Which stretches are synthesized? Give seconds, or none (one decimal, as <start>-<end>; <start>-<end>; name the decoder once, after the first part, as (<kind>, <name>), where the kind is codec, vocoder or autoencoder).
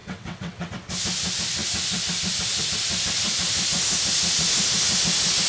0.0-0.7 (vocoder, WaveNeXt)